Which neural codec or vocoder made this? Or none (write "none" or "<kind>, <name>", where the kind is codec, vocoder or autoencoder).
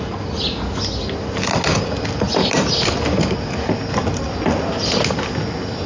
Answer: none